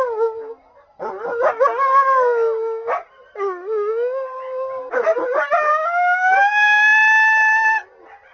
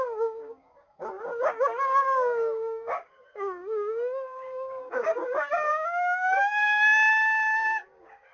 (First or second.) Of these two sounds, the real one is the first